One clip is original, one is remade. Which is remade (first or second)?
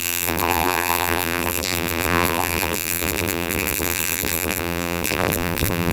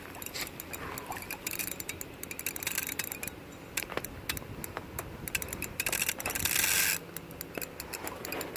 first